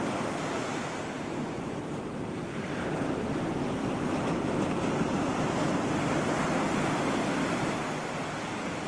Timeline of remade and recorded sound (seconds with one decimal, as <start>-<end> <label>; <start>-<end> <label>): 0.0-1.3 recorded; 1.3-1.8 remade; 1.8-8.9 recorded